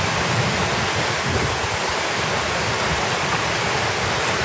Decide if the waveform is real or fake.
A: real